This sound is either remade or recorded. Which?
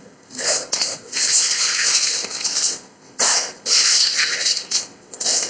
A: remade